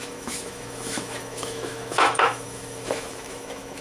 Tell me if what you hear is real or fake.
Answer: fake